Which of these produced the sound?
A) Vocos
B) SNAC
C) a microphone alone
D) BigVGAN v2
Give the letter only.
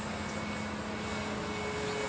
C